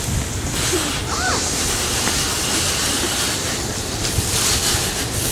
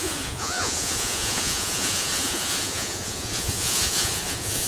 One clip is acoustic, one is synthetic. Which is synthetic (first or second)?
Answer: second